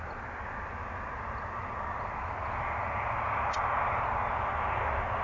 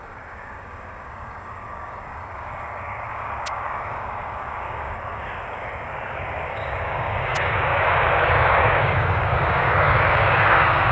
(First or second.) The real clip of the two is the first